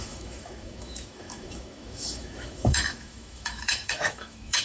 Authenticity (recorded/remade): remade